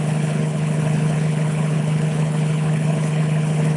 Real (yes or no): no